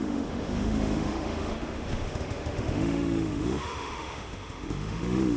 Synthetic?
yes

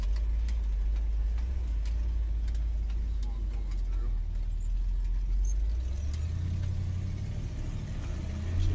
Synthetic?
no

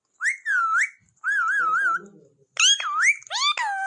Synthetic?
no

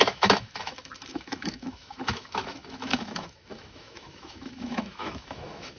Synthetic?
yes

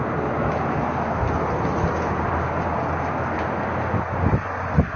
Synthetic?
no